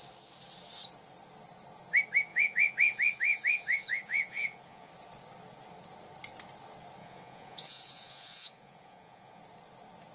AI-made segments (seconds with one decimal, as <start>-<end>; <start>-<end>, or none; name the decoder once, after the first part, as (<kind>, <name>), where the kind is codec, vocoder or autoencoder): 2.3-4.9 (vocoder, Vocos); 7.0-9.4